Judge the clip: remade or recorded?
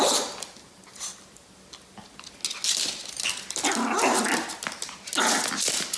recorded